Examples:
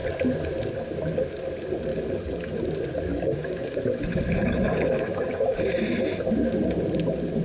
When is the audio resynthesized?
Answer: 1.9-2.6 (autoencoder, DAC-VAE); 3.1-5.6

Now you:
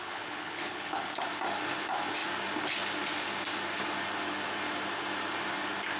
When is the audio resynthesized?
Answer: 0.0-1.2 (codec, HILCodec)

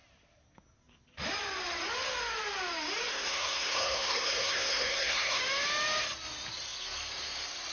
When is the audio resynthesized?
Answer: 3.1-5.4 (codec, SNAC)

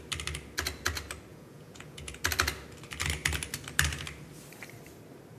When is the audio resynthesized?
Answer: 1.3-2.2 (vocoder, Vocos)

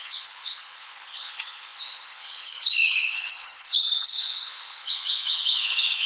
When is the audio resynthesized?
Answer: 0.0-6.1 (codec, HILCodec)

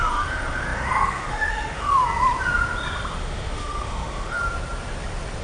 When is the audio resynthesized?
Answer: 0.0-2.0 (autoencoder, DAC-VAE); 3.1-4.4

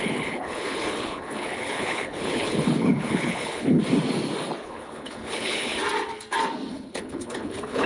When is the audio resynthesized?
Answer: 0.0-3.8 (codec, HILCodec); 4.6-5.7; 6.7-7.9

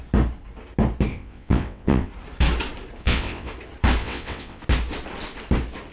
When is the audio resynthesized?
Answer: 1.1-2.1 (vocoder, WaveNeXt); 3.0-3.5; 4.0-4.6